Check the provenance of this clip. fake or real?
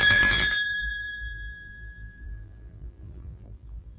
fake